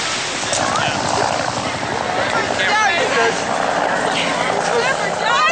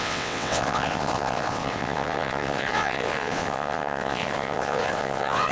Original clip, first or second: first